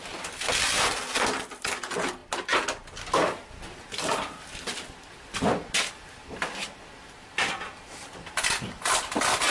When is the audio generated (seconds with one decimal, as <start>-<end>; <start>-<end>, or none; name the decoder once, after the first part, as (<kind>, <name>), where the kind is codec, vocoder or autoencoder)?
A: none